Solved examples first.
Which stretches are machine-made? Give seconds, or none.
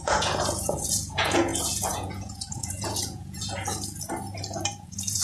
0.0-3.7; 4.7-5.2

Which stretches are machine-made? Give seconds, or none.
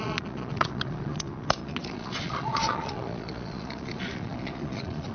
0.0-5.1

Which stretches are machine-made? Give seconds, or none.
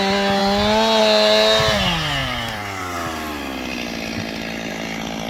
2.2-2.8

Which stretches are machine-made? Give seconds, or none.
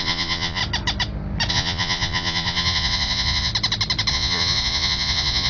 0.0-0.6; 1.5-3.5; 4.1-5.5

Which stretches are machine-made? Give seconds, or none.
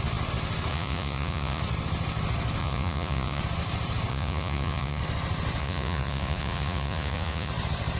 0.7-1.6; 2.6-3.4; 4.1-5.0; 5.6-7.5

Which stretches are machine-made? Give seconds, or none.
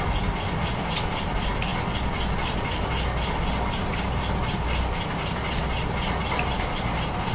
none